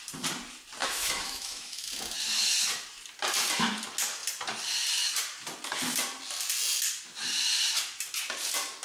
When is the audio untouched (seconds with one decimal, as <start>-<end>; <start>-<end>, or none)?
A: 0.0-0.8; 1.9-8.8